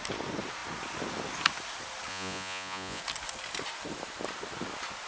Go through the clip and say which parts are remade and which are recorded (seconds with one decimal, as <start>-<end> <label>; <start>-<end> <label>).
0.0-2.1 recorded; 2.1-3.0 remade; 3.0-5.1 recorded